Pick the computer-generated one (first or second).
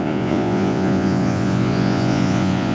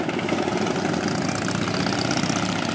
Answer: first